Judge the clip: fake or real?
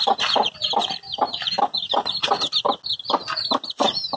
real